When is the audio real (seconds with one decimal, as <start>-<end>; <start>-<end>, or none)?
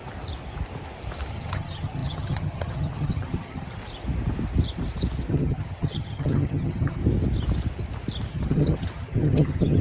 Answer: 0.0-1.3; 3.8-5.3; 7.0-8.3